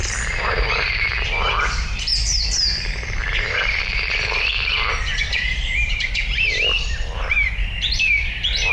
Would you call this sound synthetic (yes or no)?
yes